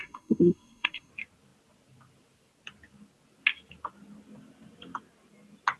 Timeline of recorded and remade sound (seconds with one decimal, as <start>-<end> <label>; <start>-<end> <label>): 0.0-1.1 remade; 1.1-5.8 recorded